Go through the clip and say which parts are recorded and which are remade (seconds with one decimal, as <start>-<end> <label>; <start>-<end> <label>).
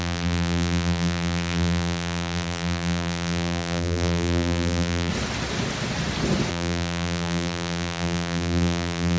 0.0-5.1 remade; 5.1-6.5 recorded; 6.5-9.2 remade